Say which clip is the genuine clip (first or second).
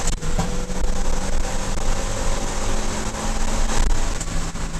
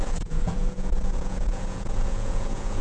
first